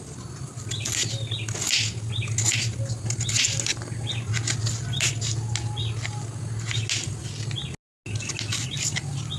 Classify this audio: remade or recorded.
recorded